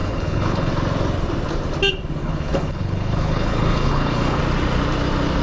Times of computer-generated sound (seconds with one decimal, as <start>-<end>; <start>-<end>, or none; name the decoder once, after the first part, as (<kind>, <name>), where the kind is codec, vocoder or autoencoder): 0.0-0.7 (codec, HILCodec); 2.2-4.4